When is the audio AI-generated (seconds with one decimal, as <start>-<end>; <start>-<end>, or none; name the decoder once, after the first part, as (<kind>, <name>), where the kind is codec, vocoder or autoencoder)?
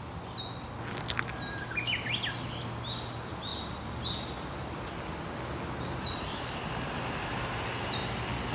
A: none